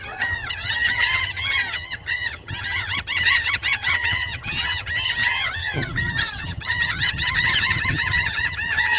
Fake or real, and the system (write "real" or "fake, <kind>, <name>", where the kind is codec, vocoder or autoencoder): fake, vocoder, HiFi-GAN